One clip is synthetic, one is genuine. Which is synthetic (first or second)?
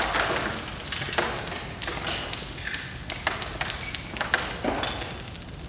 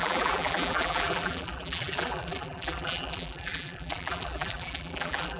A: second